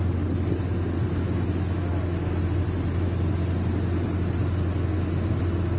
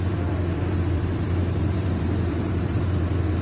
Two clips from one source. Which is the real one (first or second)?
first